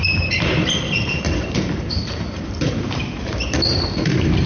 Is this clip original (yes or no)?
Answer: no